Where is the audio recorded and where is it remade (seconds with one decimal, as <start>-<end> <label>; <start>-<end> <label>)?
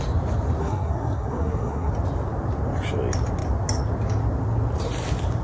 0.0-0.6 recorded; 0.6-1.9 remade; 1.9-5.4 recorded